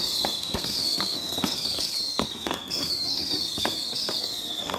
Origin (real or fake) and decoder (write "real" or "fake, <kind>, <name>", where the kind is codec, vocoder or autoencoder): fake, codec, SNAC